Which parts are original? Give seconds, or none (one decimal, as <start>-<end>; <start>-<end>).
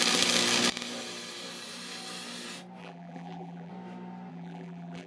0.0-2.8; 3.7-4.3